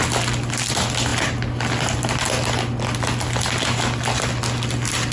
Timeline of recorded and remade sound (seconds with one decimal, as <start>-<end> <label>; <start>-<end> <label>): 0.0-5.1 recorded